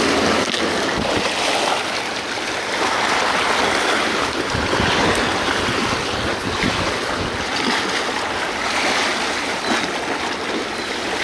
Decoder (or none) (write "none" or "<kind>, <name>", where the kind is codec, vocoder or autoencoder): none